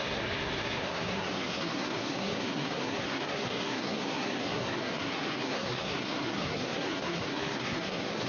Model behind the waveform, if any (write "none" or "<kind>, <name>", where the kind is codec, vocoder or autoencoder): codec, SNAC